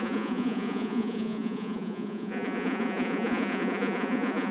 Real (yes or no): no